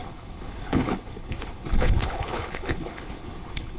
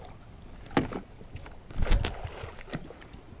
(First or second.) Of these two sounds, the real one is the second